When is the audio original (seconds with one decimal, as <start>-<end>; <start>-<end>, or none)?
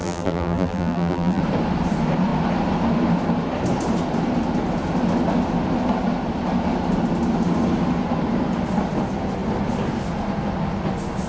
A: 1.4-11.3